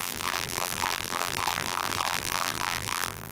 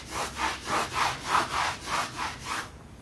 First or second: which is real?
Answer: second